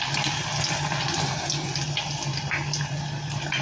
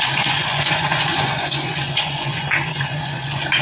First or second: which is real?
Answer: first